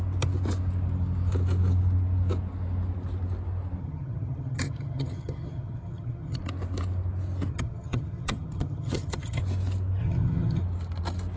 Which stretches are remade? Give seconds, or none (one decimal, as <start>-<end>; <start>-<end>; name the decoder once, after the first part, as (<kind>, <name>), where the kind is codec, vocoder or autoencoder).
3.8-6.4 (vocoder, HiFi-GAN); 7.5-9.4; 10.0-10.6